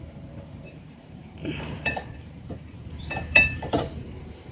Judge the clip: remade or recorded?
remade